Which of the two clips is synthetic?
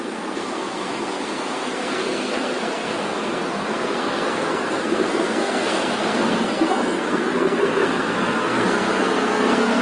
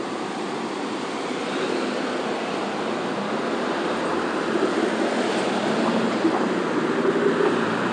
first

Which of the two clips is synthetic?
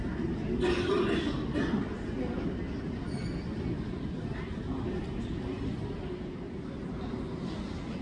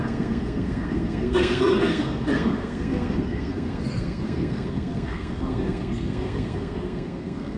second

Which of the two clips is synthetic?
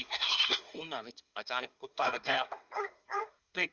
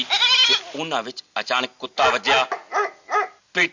first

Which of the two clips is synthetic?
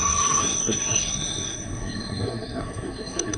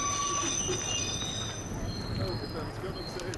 first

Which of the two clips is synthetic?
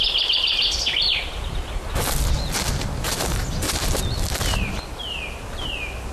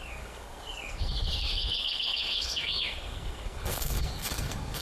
second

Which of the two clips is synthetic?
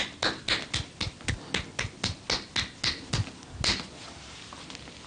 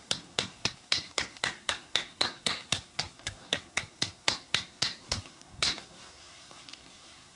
second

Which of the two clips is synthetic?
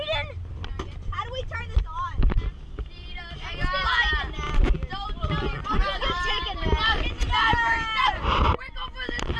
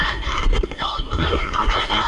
second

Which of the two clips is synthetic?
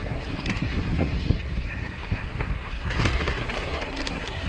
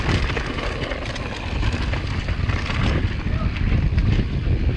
first